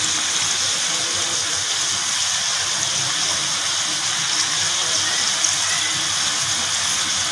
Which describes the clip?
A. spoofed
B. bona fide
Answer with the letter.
B